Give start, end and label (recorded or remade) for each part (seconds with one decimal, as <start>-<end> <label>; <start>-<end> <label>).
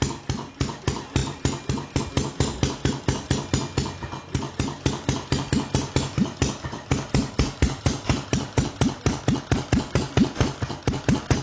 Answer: 0.0-11.4 recorded